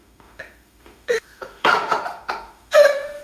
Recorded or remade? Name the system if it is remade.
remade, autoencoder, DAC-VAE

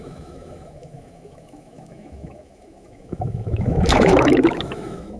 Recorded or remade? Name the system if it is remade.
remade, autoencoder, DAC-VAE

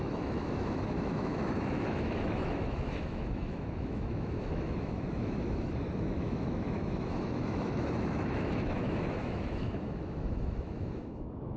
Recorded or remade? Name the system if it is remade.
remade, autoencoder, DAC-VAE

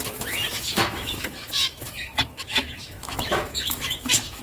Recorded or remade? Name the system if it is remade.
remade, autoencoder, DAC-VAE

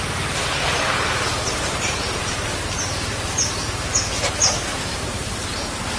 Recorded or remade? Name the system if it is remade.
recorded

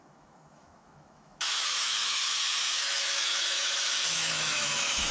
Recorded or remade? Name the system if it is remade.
remade, autoencoder, DAC-VAE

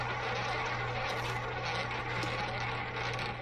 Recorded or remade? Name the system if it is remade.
recorded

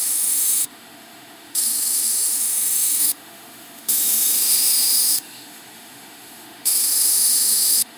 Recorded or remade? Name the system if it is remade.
remade, autoencoder, DAC-VAE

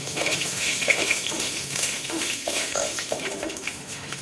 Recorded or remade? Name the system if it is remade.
remade, autoencoder, DAC-VAE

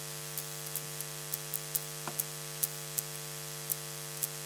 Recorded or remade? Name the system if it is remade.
recorded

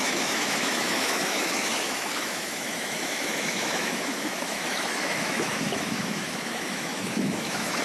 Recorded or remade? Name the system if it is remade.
remade, autoencoder, DAC-VAE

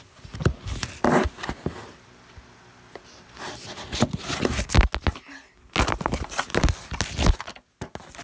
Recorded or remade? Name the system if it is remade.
recorded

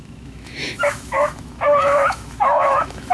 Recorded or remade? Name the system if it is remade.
remade, autoencoder, DAC-VAE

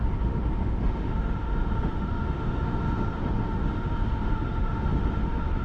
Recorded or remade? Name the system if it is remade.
remade, autoencoder, DAC-VAE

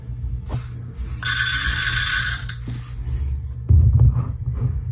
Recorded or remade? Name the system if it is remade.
recorded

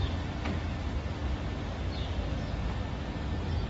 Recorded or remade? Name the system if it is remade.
recorded